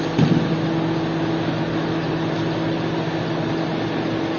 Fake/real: real